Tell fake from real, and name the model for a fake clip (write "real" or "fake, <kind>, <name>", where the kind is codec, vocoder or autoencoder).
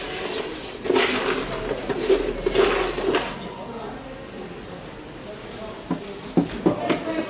real